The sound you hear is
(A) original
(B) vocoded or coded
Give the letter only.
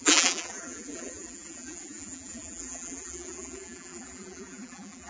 B